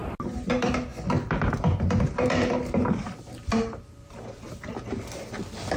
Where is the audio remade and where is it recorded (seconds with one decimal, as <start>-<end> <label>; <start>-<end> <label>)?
0.0-5.8 recorded